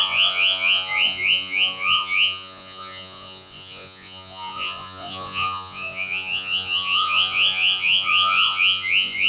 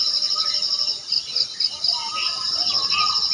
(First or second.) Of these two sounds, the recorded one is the second